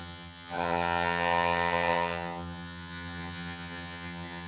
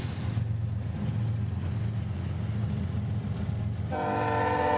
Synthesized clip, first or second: first